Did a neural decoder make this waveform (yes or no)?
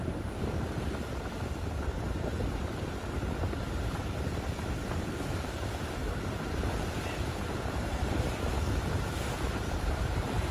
yes